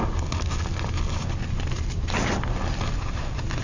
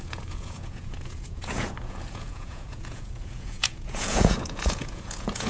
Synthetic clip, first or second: second